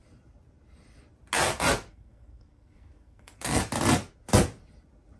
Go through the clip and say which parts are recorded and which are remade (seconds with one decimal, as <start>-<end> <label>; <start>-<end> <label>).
0.0-1.9 recorded; 1.9-3.6 remade; 3.6-5.2 recorded